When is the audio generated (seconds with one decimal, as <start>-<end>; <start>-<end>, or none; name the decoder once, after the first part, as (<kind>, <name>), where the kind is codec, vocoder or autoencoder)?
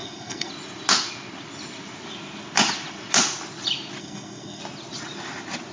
0.0-0.5 (codec, SNAC); 4.0-4.6